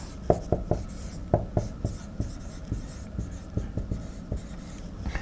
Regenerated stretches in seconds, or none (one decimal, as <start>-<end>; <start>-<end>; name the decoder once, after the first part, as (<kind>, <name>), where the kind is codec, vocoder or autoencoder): none